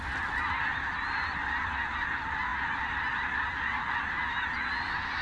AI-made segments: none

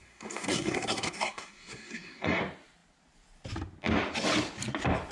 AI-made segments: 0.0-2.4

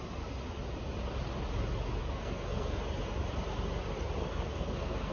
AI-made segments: 2.0-2.8; 4.2-5.1

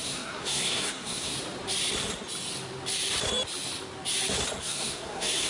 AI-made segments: 0.0-1.3; 4.6-5.5

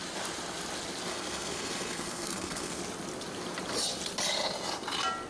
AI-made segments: 1.1-2.8

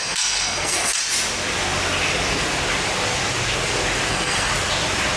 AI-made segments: 0.0-1.0; 4.1-4.5

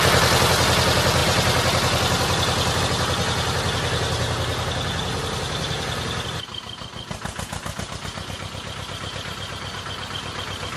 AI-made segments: none

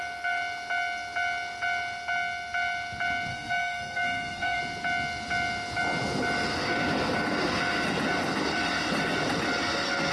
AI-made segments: 3.3-4.6